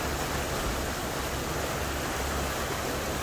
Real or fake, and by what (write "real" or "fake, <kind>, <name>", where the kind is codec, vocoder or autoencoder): real